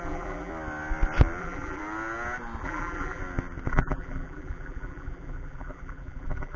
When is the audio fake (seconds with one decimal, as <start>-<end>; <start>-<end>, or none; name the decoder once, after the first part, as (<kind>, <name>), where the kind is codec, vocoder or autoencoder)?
0.0-0.5 (vocoder, BigVGAN v2); 1.4-1.8; 2.6-3.2; 3.7-6.6